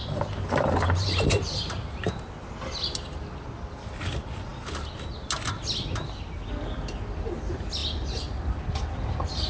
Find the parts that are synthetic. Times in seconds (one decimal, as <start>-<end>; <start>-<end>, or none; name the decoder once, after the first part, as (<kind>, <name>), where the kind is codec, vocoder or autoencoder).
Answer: 0.0-2.3 (vocoder, BigVGAN v2)